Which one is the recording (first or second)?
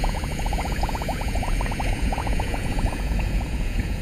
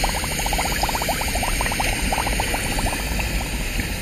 second